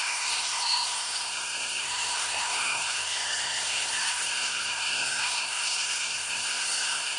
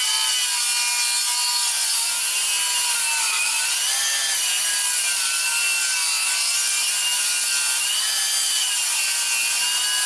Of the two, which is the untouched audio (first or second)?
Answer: second